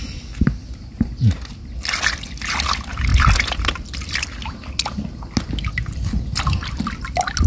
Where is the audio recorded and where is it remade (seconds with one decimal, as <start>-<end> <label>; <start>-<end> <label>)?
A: 0.0-7.5 recorded